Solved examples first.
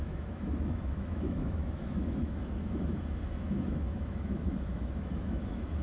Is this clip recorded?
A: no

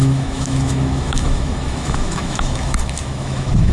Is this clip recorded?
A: no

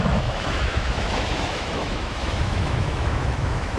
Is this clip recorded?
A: no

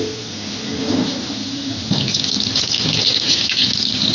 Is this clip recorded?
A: yes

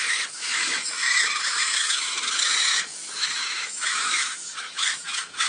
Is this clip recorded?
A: no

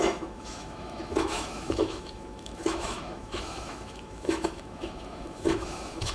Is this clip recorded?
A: no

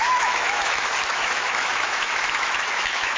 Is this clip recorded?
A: no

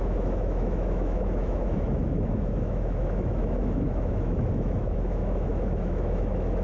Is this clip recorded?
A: no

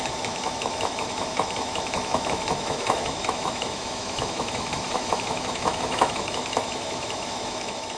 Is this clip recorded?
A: no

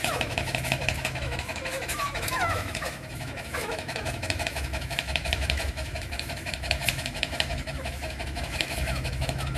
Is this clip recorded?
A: no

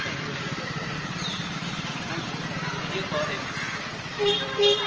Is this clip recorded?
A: yes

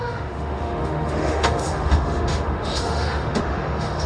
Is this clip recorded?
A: no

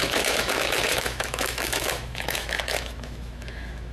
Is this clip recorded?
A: no